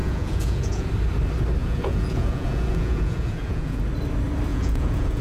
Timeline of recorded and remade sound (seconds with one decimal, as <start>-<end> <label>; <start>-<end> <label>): 0.0-0.9 remade; 0.9-1.6 recorded; 1.6-3.8 remade; 3.8-4.5 recorded; 4.5-5.2 remade